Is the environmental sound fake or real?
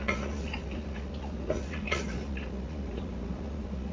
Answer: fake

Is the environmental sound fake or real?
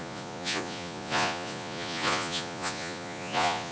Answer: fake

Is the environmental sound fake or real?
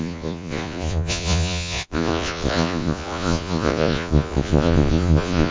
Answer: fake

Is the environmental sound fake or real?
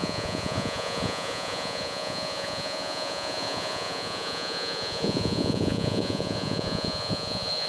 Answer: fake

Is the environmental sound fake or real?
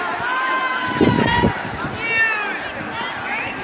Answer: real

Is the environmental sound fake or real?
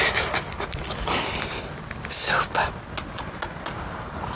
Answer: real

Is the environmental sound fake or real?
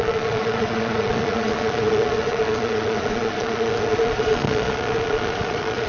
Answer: fake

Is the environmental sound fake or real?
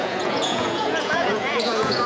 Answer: fake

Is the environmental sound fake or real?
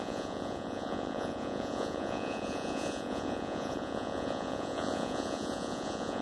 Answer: fake